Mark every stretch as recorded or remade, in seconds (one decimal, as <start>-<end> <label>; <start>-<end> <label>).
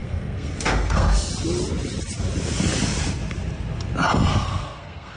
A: 0.0-1.3 remade; 1.3-4.3 recorded; 4.3-5.2 remade